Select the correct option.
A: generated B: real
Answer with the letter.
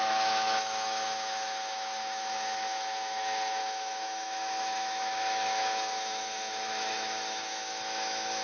A